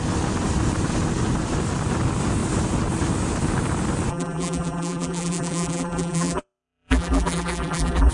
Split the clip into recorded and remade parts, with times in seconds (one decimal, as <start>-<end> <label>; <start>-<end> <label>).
0.0-4.1 recorded; 4.1-8.1 remade